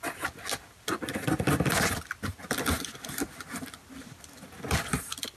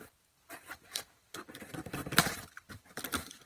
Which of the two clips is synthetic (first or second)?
second